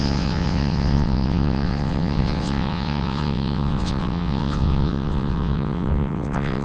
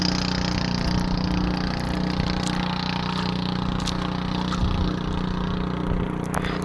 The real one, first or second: second